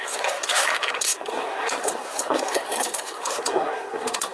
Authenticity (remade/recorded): remade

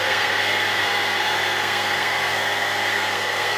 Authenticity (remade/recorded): remade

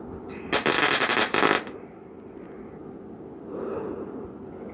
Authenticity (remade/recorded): recorded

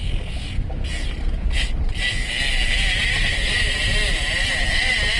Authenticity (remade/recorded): recorded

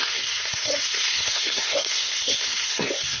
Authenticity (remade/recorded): remade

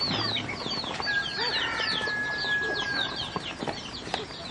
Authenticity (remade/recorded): recorded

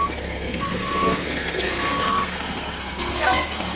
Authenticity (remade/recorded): remade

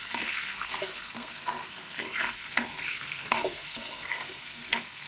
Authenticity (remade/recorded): remade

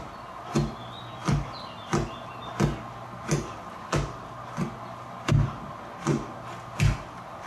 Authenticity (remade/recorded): recorded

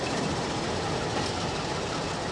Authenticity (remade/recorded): recorded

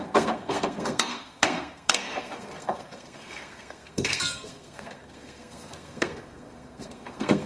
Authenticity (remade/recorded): remade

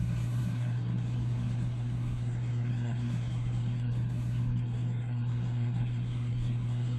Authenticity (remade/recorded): remade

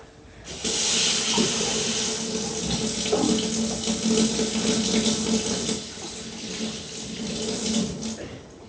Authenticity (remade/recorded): recorded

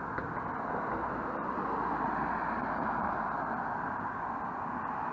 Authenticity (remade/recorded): recorded